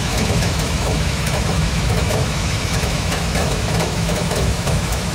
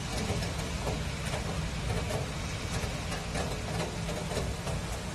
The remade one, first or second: first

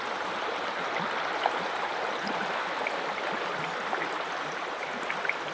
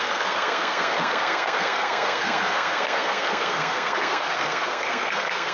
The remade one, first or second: second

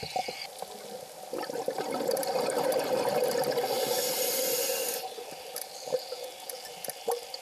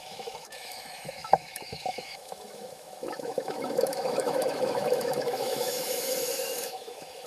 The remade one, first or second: second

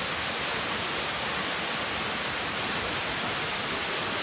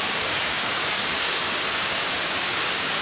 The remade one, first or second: second